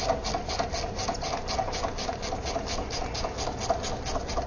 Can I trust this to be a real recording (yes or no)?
yes